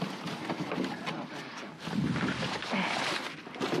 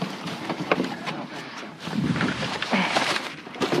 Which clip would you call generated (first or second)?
second